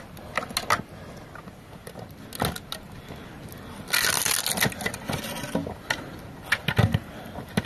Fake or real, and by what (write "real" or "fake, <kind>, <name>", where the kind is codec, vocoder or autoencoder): real